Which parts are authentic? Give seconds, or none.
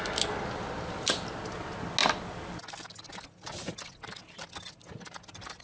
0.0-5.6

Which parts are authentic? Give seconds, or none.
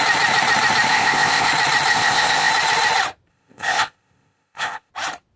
0.0-0.9; 1.5-1.9; 2.5-3.3; 4.9-5.4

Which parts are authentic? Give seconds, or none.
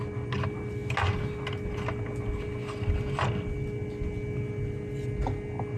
0.0-5.8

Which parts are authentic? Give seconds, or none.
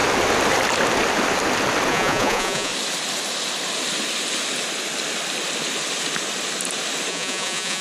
0.0-1.9; 2.7-7.1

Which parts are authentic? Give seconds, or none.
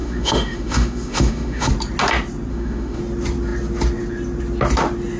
1.7-2.5; 3.0-5.2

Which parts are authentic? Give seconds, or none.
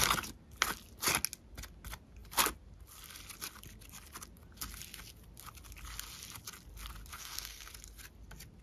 0.0-7.1; 7.7-8.6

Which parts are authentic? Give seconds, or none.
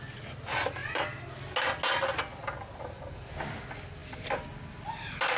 0.0-5.4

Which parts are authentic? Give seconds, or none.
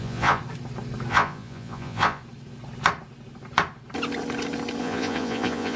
0.4-1.1; 2.2-4.8